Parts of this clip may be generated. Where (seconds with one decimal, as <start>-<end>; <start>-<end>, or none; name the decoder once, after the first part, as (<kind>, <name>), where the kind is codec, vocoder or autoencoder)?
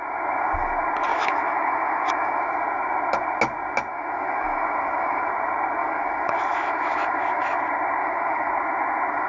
1.1-2.4 (autoencoder, DAC-VAE); 3.9-5.3; 5.8-7.6; 8.0-8.5